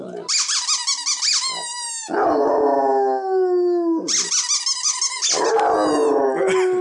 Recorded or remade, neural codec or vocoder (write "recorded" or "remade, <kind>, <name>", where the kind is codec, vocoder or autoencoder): recorded